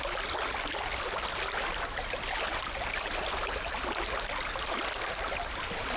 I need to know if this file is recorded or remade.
recorded